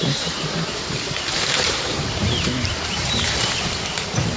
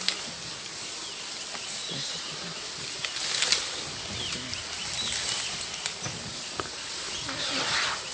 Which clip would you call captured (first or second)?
second